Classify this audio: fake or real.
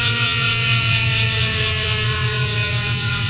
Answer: fake